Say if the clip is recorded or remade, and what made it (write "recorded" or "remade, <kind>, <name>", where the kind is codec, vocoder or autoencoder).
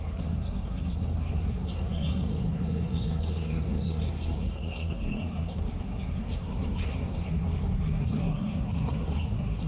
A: remade, codec, SNAC